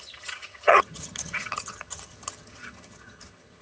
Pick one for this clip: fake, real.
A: fake